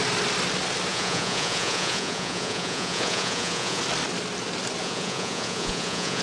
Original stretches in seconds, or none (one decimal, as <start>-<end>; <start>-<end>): 0.0-0.9; 3.8-4.8